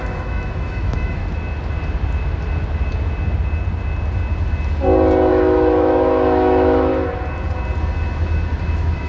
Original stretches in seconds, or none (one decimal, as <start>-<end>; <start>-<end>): 1.2-5.3; 6.9-8.6